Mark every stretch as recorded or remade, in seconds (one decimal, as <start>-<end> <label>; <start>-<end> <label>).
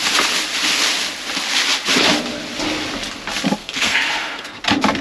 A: 0.0-3.6 recorded; 3.6-4.6 remade; 4.6-5.0 recorded